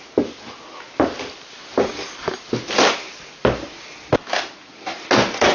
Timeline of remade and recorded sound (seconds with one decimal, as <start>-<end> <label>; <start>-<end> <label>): 0.0-5.5 recorded